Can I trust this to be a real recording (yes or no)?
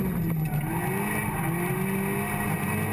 yes